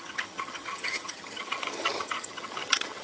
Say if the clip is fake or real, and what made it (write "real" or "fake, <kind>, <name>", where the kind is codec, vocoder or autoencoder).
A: fake, vocoder, HiFi-GAN